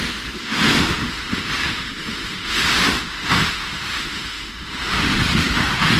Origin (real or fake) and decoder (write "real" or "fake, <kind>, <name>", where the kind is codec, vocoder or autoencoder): fake, autoencoder, DAC-VAE